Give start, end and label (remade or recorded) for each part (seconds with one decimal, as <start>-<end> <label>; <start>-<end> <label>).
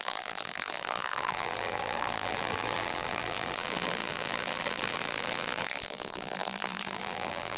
0.0-7.6 remade